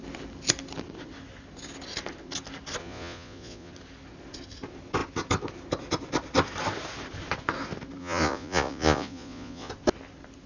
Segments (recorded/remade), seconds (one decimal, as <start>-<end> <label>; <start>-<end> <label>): 0.0-2.8 recorded; 2.8-3.7 remade; 3.7-8.0 recorded; 8.0-9.7 remade; 9.7-10.5 recorded

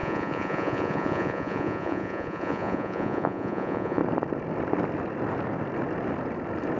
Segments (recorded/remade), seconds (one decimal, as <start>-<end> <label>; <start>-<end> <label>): 0.0-4.0 remade; 4.0-6.8 recorded

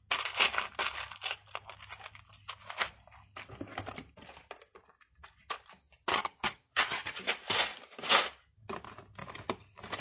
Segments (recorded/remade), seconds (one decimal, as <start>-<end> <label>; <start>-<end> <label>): 0.0-6.1 recorded; 6.1-7.2 remade; 7.2-10.0 recorded